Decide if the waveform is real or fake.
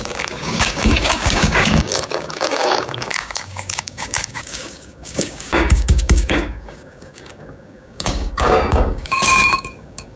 fake